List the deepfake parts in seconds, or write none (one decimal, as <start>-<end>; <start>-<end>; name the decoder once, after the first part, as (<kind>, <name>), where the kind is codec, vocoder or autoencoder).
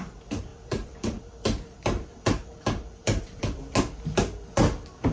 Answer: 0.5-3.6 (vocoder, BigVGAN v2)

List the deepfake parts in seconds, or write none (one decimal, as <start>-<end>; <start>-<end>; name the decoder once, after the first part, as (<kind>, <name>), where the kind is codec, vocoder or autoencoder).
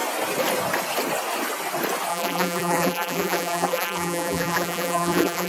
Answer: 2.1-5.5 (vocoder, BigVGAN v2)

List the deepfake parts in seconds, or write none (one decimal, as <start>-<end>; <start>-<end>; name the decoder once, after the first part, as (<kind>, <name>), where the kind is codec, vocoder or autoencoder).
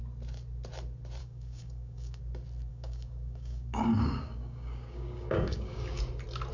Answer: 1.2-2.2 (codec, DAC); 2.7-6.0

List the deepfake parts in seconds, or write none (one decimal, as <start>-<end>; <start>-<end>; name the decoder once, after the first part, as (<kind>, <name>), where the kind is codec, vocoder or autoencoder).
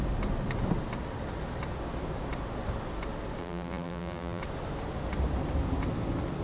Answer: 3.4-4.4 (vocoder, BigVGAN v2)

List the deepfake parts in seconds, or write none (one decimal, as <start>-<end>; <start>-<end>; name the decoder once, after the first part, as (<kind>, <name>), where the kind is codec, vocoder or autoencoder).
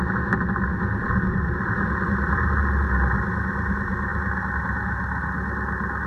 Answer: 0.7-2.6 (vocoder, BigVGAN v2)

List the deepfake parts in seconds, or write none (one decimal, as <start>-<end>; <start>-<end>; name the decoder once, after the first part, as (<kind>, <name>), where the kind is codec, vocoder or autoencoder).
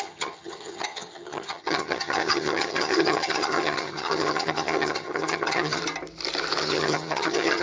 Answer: 0.0-5.8 (vocoder, HiFi-GAN); 6.6-7.6